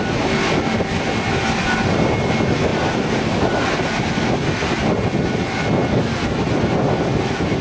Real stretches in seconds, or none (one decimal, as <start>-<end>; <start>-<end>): 0.0-7.6